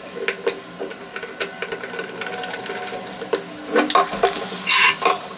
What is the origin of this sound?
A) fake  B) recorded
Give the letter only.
B